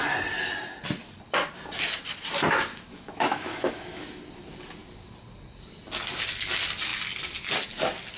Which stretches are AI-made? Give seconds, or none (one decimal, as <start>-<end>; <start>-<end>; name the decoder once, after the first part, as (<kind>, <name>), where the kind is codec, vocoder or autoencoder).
2.7-4.2 (autoencoder, DAC-VAE)